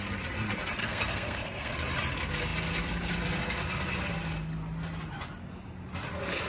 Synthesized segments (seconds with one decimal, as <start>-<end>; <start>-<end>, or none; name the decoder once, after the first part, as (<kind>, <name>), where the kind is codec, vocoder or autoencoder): 0.8-1.7 (codec, SNAC)